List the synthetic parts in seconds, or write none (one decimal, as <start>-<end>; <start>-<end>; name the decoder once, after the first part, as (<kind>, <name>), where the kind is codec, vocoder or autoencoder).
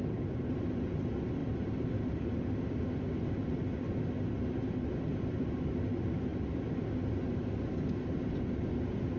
none